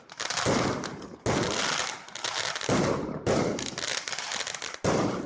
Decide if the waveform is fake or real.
real